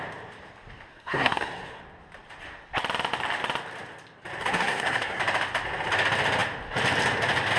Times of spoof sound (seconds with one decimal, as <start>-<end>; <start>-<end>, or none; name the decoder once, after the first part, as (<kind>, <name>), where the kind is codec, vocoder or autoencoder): 0.9-1.8 (codec, SNAC); 4.4-5.2